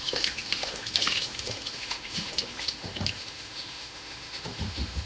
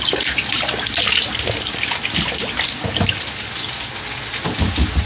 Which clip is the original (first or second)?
second